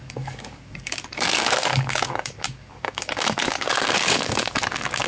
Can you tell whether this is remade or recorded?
remade